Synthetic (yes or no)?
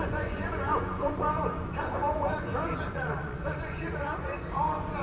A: yes